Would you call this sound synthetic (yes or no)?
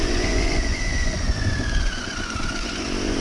yes